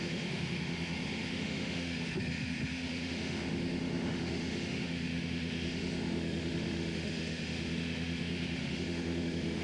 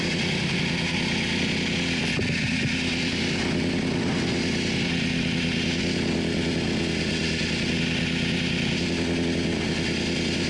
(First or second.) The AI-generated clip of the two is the first